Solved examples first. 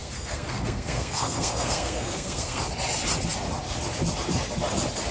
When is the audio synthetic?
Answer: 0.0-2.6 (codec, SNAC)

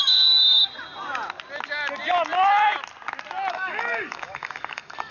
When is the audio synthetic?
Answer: 0.0-0.6 (codec, DAC); 3.5-5.1

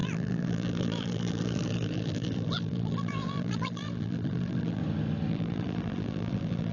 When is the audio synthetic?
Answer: 0.0-4.8 (vocoder, BigVGAN v2); 5.3-6.7